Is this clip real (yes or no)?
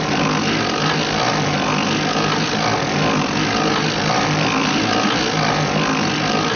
yes